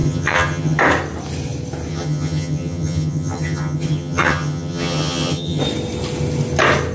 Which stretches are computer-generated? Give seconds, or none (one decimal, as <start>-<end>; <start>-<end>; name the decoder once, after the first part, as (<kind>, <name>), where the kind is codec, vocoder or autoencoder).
0.0-0.8 (vocoder, HiFi-GAN); 1.9-5.6